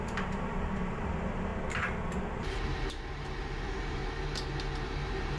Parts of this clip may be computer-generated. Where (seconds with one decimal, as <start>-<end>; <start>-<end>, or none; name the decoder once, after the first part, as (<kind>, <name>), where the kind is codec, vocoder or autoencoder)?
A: 0.0-1.5 (vocoder, BigVGAN v2); 2.4-4.0; 4.8-5.4